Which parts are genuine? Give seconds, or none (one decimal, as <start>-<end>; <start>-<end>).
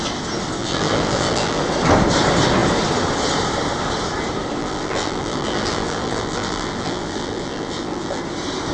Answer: 0.0-0.6; 1.6-4.6; 8.2-8.7